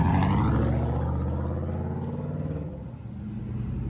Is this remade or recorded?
recorded